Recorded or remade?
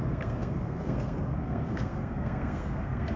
remade